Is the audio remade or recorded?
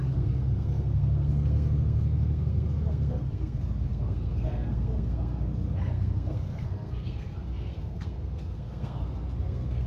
remade